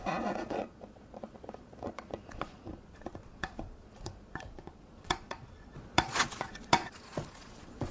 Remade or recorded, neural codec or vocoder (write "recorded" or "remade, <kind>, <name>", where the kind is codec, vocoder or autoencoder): remade, vocoder, Vocos